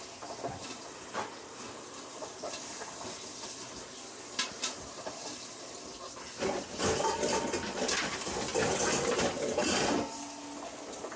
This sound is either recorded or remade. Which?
recorded